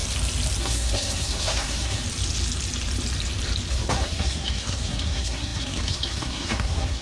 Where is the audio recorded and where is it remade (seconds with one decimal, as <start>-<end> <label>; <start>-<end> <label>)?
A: 0.0-0.6 recorded; 0.6-2.0 remade; 2.0-3.7 recorded; 3.7-7.0 remade